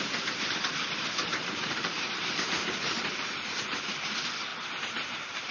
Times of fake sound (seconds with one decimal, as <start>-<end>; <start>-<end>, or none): 1.2-4.1; 4.5-5.5